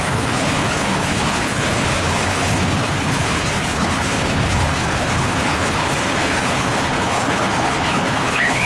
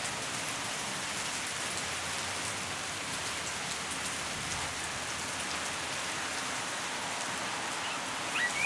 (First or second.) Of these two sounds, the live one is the second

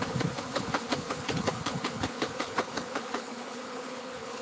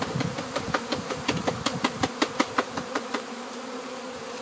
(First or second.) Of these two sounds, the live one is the second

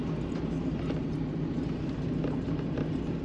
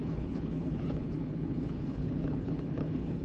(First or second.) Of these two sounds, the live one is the first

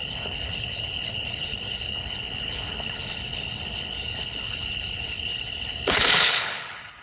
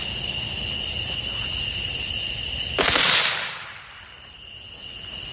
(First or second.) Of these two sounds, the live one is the second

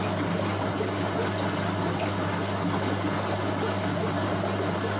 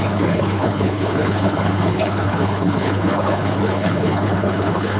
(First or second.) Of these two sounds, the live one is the first